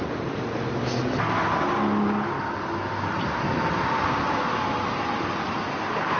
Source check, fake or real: real